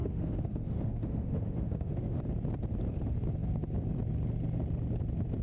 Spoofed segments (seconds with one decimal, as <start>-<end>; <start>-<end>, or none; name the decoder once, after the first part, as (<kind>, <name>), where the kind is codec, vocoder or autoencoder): 0.0-2.2 (autoencoder, DAC-VAE)